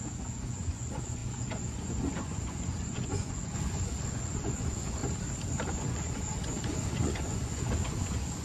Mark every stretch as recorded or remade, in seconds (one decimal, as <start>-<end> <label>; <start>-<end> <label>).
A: 0.0-5.0 remade; 5.0-5.7 recorded; 5.7-8.4 remade